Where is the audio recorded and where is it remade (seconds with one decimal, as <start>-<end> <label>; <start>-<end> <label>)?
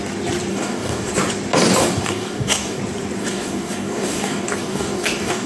0.0-0.5 recorded; 0.5-1.1 remade; 1.1-1.8 recorded; 1.8-2.8 remade; 2.8-3.2 recorded; 3.2-5.5 remade